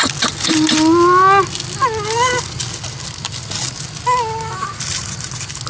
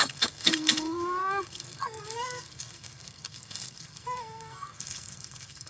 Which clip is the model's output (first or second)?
second